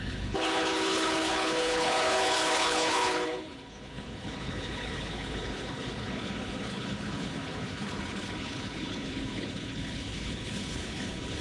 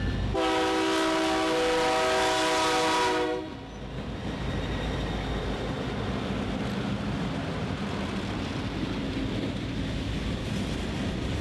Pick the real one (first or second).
second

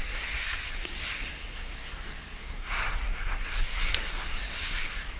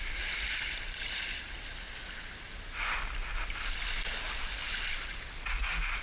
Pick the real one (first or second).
second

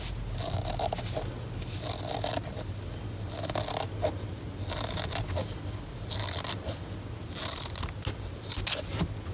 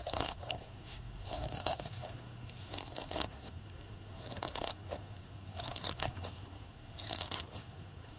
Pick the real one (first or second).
first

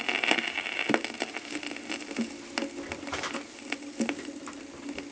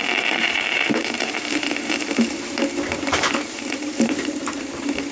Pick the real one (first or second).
first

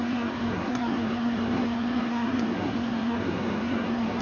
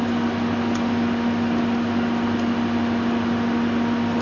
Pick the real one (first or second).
second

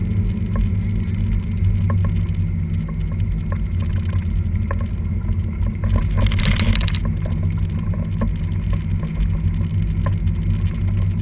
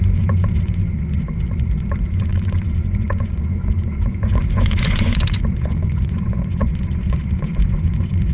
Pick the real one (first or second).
first